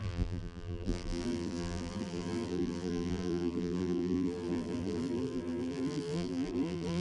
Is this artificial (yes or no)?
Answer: yes